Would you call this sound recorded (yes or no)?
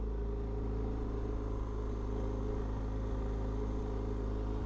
yes